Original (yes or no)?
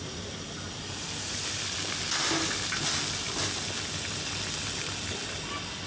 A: yes